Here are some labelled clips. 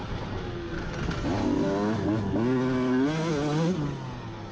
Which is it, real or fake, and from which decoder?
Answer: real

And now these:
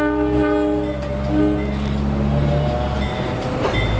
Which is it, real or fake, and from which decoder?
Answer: real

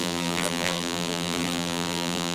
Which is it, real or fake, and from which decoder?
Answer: fake, vocoder, BigVGAN v2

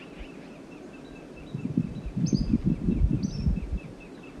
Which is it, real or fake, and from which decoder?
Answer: real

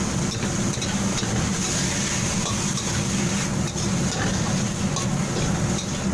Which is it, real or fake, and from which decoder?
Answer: real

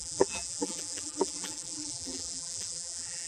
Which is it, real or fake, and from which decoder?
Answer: fake, vocoder, BigVGAN v2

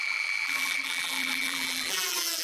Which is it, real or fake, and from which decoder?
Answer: fake, vocoder, BigVGAN v2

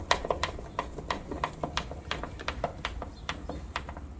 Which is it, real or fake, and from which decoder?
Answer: real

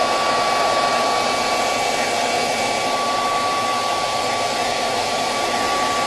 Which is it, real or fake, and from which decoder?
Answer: real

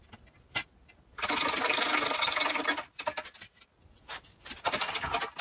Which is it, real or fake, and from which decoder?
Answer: real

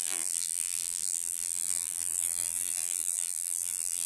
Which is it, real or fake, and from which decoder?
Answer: fake, vocoder, BigVGAN v2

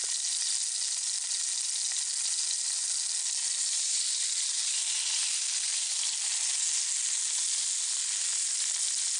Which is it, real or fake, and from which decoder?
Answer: real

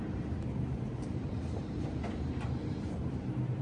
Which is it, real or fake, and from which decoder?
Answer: fake, vocoder, BigVGAN v2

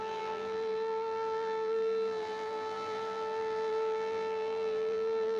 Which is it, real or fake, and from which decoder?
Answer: fake, vocoder, BigVGAN v2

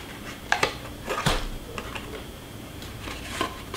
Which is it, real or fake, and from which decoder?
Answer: fake, vocoder, BigVGAN v2